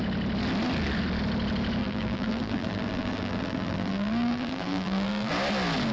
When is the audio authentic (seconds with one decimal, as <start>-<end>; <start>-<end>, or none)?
0.0-1.8; 5.3-5.9